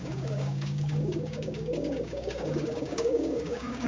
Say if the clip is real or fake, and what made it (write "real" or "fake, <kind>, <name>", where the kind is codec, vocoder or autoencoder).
fake, codec, DAC